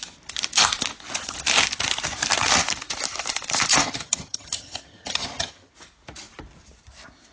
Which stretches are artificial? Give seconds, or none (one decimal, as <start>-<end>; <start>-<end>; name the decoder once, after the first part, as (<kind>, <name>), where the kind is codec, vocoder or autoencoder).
3.7-5.7 (vocoder, HiFi-GAN)